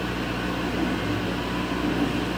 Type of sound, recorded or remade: recorded